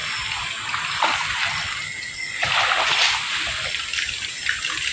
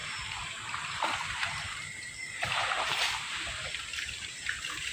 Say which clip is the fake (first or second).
second